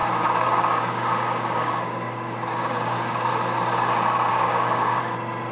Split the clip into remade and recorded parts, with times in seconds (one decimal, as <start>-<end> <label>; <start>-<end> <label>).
0.0-3.3 remade; 3.3-4.3 recorded; 4.3-5.0 remade; 5.0-5.5 recorded